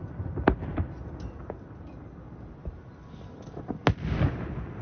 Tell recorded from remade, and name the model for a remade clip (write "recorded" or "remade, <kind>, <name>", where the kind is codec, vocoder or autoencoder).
recorded